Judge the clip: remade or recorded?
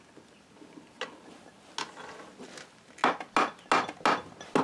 recorded